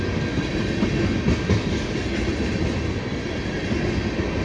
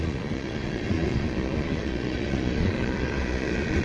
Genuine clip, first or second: first